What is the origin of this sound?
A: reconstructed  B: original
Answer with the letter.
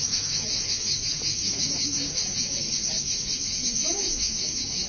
A